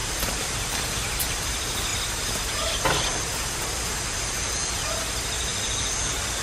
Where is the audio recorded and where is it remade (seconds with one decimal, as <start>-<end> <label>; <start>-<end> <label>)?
0.0-6.4 recorded